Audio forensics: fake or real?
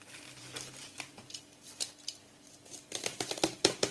fake